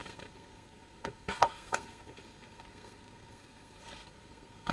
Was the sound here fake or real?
fake